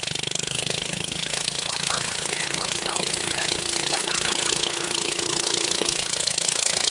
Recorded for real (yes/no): no